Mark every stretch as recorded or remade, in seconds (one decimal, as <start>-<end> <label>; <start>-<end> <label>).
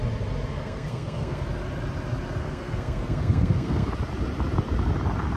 0.0-0.5 recorded; 0.5-1.4 remade; 1.4-2.4 recorded; 2.4-3.9 remade; 3.9-5.4 recorded